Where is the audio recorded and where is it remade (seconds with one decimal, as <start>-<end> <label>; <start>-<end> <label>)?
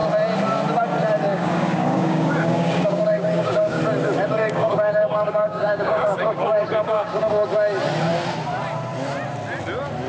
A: 0.0-1.3 recorded; 1.3-3.8 remade; 3.8-4.4 recorded; 4.4-7.3 remade; 7.3-10.1 recorded